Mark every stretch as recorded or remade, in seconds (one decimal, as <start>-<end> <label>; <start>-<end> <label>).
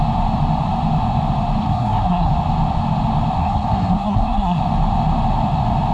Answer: 0.0-1.6 recorded; 1.6-2.3 remade; 2.3-3.4 recorded; 3.4-4.6 remade; 4.6-5.9 recorded